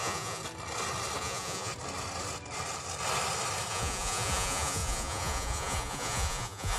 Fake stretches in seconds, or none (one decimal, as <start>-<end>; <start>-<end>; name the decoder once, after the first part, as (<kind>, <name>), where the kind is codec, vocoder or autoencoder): 0.0-0.4 (vocoder, Vocos); 1.2-1.7; 3.7-6.8